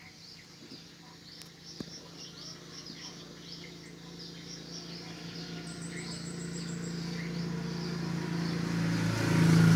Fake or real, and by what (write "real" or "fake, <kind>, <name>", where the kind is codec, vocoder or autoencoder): real